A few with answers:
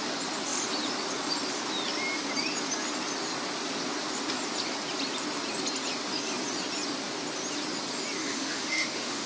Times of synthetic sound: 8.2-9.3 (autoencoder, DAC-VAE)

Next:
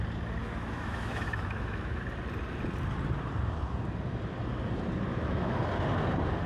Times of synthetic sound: 0.4-2.0 (autoencoder, DAC-VAE); 5.1-5.6

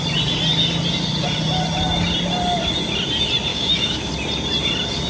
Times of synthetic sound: 3.5-4.1 (autoencoder, DAC-VAE)

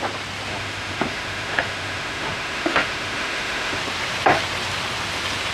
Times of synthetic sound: 0.5-3.8 (autoencoder, DAC-VAE)

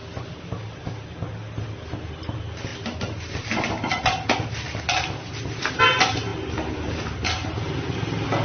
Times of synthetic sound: none

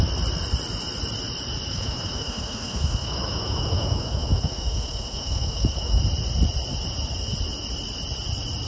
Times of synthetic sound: 1.7-6.0 (autoencoder, DAC-VAE)